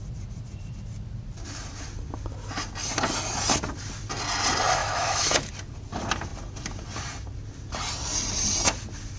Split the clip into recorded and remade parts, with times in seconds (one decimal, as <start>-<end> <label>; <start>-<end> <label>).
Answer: 0.0-4.8 recorded; 4.8-5.5 remade; 5.5-9.2 recorded